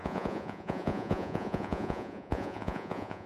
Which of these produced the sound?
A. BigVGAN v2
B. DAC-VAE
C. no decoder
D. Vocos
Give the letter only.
D